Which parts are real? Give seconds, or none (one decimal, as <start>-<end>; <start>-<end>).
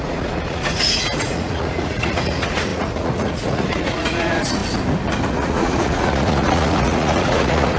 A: 4.6-5.2